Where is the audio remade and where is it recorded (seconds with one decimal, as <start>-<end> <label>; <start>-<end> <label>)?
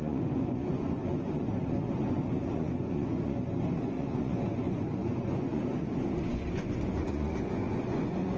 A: 0.0-8.4 remade